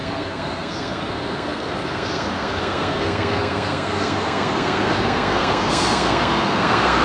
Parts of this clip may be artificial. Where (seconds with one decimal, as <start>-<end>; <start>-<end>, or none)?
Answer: 0.0-7.0